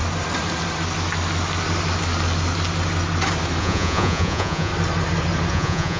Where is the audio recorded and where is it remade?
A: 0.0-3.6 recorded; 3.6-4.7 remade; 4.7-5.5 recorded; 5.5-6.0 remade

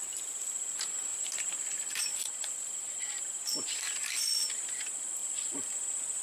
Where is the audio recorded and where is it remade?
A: 0.0-1.1 recorded; 1.1-4.8 remade; 4.8-5.2 recorded; 5.2-5.7 remade; 5.7-6.2 recorded

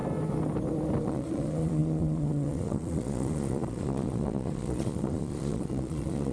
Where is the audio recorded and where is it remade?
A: 0.0-1.0 recorded; 1.0-6.3 remade

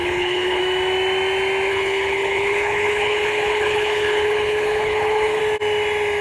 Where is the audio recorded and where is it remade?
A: 0.0-0.6 remade; 0.6-1.7 recorded; 1.7-5.4 remade; 5.4-6.2 recorded

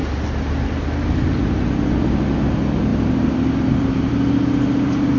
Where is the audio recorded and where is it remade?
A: 0.0-2.9 recorded; 2.9-4.1 remade; 4.1-5.2 recorded

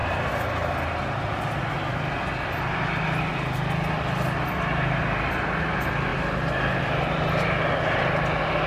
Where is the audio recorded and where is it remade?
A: 0.0-8.7 recorded

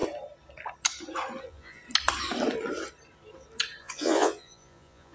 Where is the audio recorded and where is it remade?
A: 0.0-1.4 recorded; 1.4-1.8 remade; 1.8-3.8 recorded; 3.8-5.1 remade